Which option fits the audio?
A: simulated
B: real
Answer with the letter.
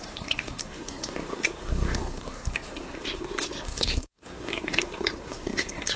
A